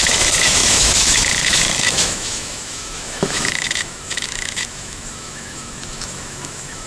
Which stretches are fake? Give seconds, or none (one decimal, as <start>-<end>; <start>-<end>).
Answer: 0.0-6.9